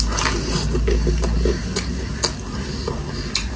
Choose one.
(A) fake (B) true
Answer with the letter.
B